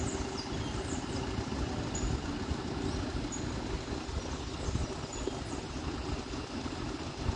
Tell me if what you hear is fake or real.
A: real